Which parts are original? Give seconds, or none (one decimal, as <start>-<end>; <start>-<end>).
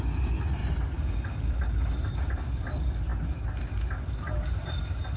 0.0-5.2